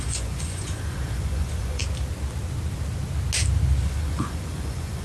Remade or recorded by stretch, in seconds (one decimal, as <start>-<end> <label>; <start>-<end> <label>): 0.0-1.8 remade; 1.8-3.9 recorded; 3.9-5.0 remade